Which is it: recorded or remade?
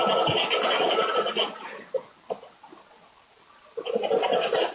recorded